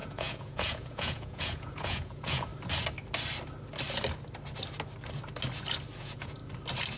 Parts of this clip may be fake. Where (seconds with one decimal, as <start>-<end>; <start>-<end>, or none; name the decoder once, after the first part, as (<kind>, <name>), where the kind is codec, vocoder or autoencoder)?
0.0-2.5 (vocoder, Vocos); 6.0-6.4